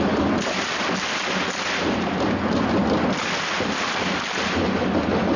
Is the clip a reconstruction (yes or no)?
no